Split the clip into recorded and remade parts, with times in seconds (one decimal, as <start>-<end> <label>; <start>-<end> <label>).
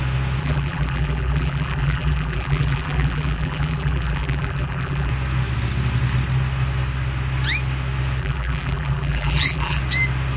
0.0-0.4 recorded; 0.4-5.1 remade; 5.1-8.2 recorded; 8.2-9.8 remade; 9.8-10.4 recorded